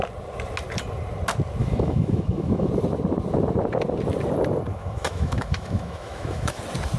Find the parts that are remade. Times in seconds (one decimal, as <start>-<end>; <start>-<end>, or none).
1.6-2.7; 4.7-6.6

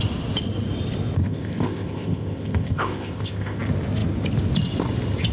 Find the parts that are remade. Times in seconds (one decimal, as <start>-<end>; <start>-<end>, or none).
1.2-3.6

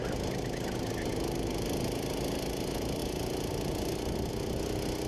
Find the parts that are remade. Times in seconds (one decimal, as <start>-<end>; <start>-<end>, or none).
none

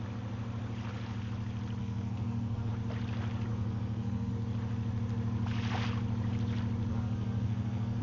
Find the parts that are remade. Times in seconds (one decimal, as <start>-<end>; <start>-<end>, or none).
1.8-2.7; 3.5-4.3; 6.9-8.0

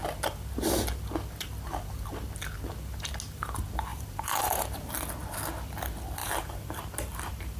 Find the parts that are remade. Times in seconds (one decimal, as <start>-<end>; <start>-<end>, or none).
3.9-4.9; 6.2-7.6

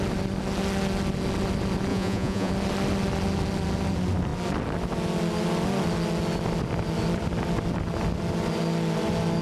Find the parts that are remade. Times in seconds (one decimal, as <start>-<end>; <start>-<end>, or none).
1.9-2.5